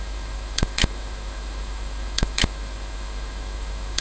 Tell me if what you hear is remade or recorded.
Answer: remade